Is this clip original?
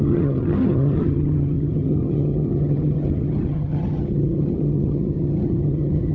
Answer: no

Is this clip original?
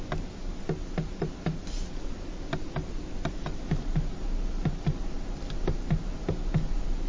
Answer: yes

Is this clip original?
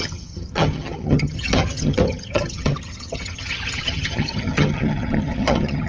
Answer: no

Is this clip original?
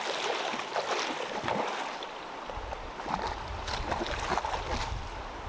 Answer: yes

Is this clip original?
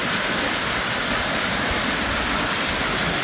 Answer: yes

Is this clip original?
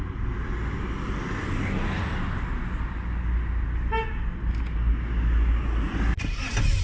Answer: yes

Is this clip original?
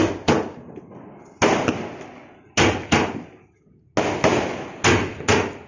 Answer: yes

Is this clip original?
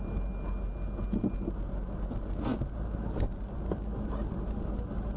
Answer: yes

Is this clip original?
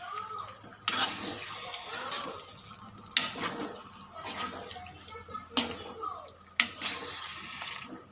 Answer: yes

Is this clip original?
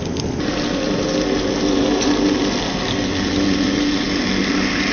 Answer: yes